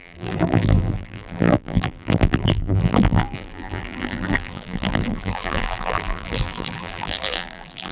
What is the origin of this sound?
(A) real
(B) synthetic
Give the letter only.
B